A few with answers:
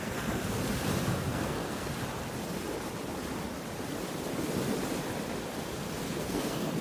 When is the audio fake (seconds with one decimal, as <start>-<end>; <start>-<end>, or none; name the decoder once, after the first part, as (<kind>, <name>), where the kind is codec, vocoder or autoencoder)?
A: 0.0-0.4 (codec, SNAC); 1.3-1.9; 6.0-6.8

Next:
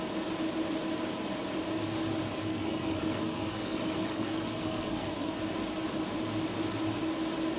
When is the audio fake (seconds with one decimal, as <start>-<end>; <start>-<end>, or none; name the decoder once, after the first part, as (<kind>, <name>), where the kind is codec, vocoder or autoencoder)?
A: 2.5-5.3 (codec, SNAC)

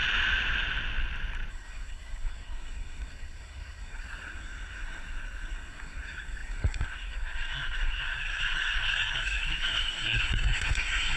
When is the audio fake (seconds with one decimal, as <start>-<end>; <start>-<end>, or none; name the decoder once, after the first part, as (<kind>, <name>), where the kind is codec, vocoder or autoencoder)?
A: 1.5-11.2 (codec, SNAC)

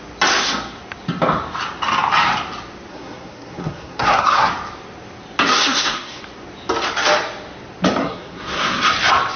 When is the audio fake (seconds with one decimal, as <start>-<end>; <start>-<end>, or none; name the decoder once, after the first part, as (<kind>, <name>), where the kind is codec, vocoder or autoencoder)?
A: 2.9-4.5 (codec, SNAC); 5.5-6.2; 8.0-8.9

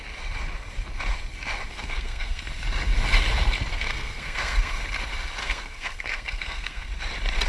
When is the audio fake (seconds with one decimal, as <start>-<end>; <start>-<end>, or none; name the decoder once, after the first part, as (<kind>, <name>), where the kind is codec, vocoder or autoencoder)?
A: 1.7-2.4 (codec, SNAC); 3.7-4.8; 5.4-6.9